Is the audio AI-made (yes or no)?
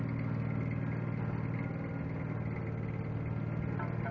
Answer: no